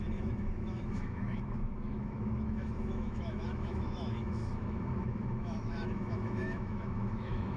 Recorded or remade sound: remade